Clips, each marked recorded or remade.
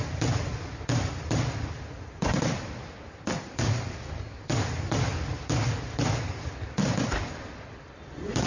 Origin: recorded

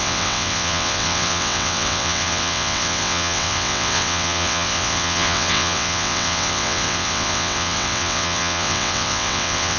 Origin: remade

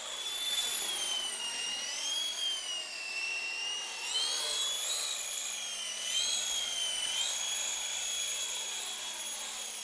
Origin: recorded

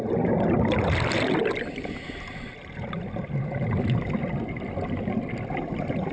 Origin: recorded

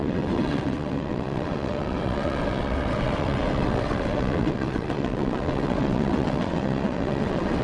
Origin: remade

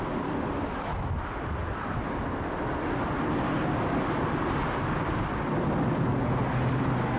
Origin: recorded